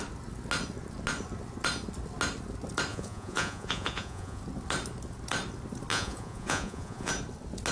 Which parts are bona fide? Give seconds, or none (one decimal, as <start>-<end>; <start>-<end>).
0.0-2.9; 4.4-5.9; 7.1-7.7